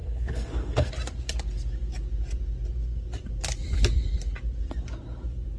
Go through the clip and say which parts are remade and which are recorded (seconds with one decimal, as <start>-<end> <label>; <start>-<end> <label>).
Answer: 0.0-0.9 remade; 0.9-5.6 recorded